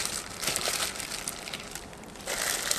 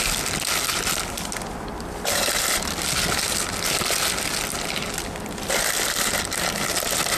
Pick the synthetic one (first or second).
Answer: first